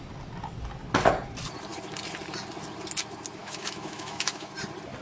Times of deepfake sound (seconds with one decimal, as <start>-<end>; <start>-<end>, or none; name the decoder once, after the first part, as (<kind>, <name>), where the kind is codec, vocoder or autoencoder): 3.4-4.5 (autoencoder, DAC-VAE)